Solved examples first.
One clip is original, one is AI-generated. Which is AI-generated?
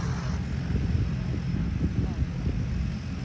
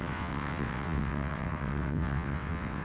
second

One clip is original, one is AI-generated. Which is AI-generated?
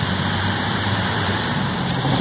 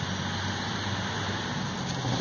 first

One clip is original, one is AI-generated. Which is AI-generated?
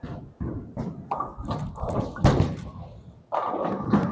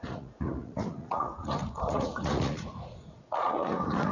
second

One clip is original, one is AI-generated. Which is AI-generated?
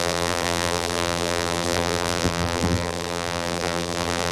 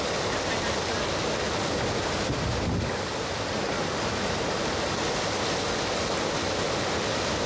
first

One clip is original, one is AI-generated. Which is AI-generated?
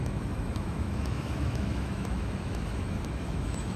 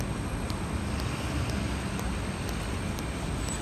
first